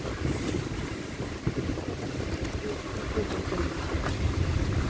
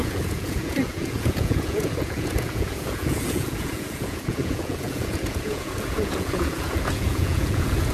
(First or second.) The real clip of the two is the first